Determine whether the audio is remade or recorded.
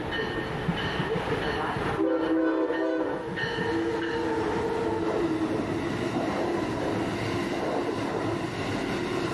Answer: recorded